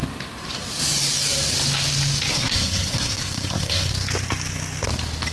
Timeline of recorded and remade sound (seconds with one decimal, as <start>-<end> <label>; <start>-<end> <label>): 0.0-2.3 recorded; 2.3-3.9 remade; 3.9-5.3 recorded